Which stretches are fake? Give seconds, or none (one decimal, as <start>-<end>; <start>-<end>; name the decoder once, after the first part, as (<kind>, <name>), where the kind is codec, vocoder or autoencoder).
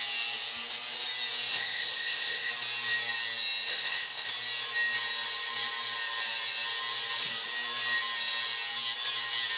1.5-2.5 (codec, ZipCodec); 3.7-4.3